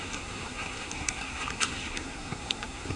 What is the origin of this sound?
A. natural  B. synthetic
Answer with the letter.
B